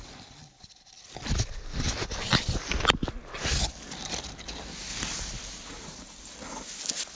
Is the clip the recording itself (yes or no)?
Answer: yes